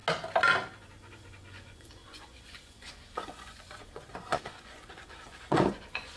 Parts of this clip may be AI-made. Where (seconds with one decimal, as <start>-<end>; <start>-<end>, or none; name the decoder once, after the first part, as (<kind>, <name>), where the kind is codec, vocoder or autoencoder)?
0.8-6.2 (vocoder, Vocos)